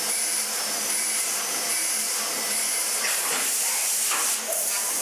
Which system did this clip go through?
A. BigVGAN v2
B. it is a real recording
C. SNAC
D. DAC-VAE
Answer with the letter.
A